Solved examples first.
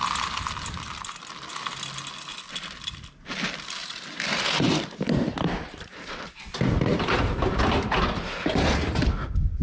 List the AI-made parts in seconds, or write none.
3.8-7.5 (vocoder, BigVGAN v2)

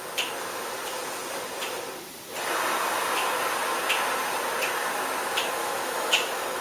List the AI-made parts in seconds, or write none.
5.6-6.6 (autoencoder, DAC-VAE)